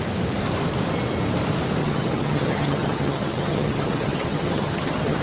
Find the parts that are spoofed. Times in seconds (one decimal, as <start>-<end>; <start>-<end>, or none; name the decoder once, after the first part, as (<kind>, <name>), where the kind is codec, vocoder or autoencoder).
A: 1.8-5.2 (vocoder, HiFi-GAN)